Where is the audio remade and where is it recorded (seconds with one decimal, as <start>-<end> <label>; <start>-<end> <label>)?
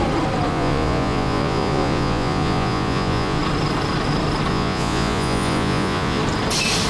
0.0-0.5 recorded; 0.5-3.4 remade; 3.4-4.5 recorded; 4.5-6.2 remade; 6.2-6.9 recorded